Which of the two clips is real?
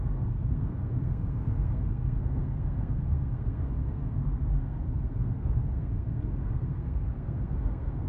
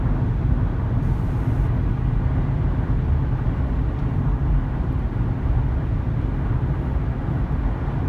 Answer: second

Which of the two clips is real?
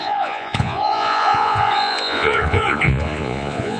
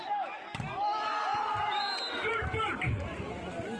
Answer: second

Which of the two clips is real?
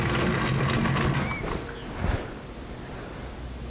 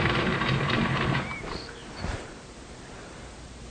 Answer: first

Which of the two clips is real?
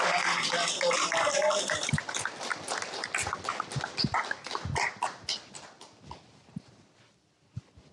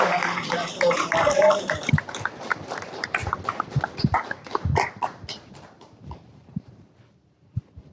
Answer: first